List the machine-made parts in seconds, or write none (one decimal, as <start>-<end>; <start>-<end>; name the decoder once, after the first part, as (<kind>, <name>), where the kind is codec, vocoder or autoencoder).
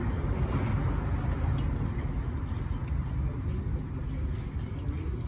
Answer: none